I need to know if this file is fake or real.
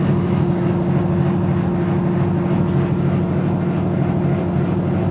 real